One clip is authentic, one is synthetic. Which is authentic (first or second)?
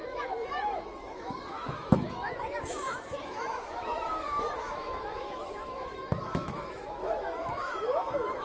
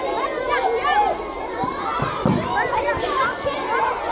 second